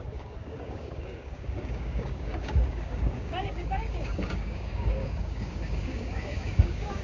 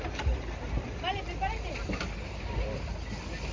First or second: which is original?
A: second